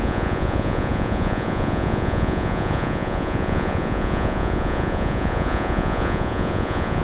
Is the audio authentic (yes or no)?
no